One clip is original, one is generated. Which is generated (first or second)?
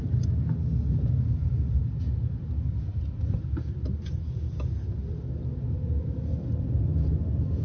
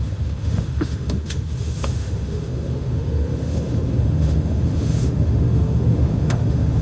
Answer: second